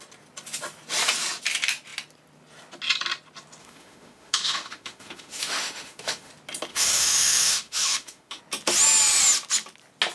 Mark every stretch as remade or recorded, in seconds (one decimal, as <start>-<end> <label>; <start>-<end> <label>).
0.0-3.6 recorded; 3.6-6.3 remade; 6.3-6.7 recorded; 6.7-8.4 remade; 8.4-10.1 recorded